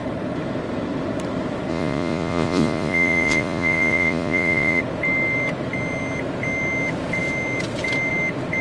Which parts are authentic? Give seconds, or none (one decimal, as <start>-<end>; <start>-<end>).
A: 0.0-1.7; 4.8-8.6